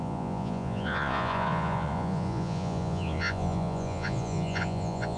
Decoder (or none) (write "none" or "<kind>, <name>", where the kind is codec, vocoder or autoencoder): vocoder, Vocos